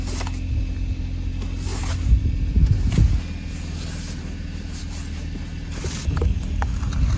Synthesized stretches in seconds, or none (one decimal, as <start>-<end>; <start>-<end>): 6.0-6.8